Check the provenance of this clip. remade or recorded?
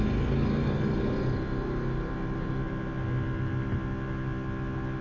recorded